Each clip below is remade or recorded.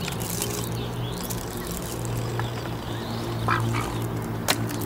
recorded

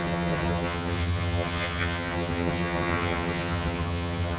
remade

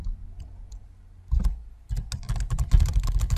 recorded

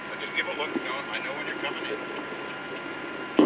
recorded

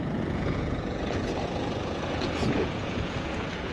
remade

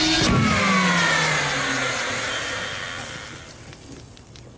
recorded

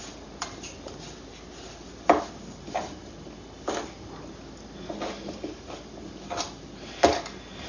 recorded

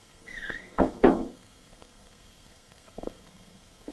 remade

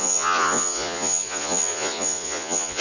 remade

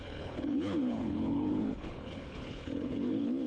remade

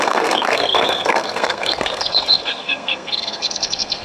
remade